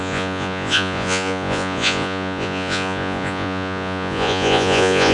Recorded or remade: remade